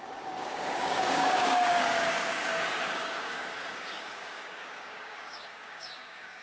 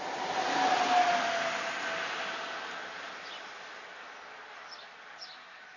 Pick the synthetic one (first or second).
first